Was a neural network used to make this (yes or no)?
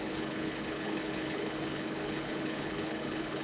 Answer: yes